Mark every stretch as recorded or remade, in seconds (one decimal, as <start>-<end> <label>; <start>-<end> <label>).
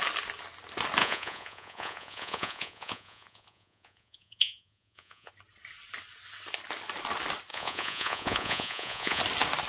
0.0-1.0 recorded; 1.0-5.3 remade; 5.3-7.5 recorded; 7.5-9.2 remade; 9.2-9.7 recorded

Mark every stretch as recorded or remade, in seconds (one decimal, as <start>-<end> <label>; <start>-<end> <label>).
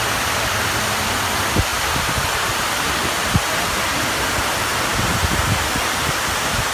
0.0-6.7 recorded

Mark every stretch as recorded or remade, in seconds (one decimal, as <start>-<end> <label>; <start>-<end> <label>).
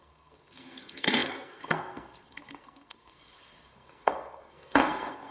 0.0-5.3 remade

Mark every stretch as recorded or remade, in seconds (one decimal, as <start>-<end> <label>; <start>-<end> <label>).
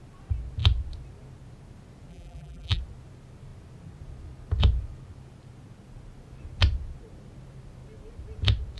0.0-2.1 recorded; 2.1-2.8 remade; 2.8-8.8 recorded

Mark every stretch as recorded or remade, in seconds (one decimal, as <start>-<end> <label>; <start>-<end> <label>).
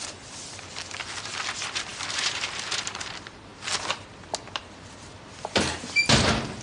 0.0-6.6 remade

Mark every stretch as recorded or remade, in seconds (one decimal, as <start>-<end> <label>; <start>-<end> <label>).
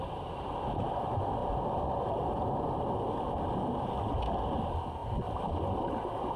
0.0-5.0 recorded; 5.0-5.6 remade; 5.6-6.4 recorded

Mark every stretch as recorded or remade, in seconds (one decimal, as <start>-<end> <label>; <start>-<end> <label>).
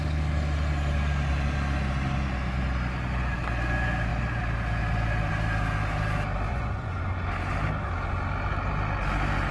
0.0-6.5 recorded; 6.5-7.0 remade; 7.0-9.5 recorded